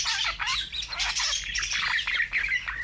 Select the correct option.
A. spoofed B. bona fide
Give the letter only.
B